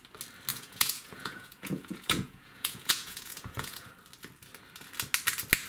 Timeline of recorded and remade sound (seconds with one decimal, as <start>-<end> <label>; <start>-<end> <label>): 0.0-0.5 recorded; 0.5-3.9 remade; 3.9-5.7 recorded